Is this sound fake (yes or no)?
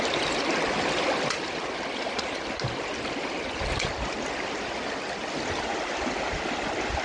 no